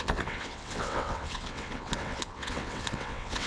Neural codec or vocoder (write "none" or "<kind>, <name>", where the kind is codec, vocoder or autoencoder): vocoder, WaveNeXt